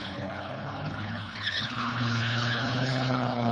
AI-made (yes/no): yes